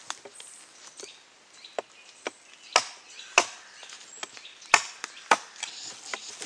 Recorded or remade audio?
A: recorded